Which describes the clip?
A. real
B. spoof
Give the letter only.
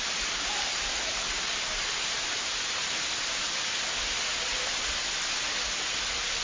A